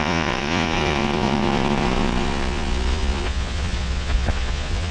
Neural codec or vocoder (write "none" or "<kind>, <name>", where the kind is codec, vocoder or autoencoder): vocoder, Vocos